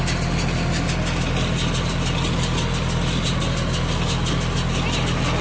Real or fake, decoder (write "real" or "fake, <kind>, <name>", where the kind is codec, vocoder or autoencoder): real